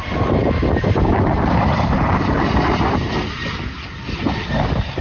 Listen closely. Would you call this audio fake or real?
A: real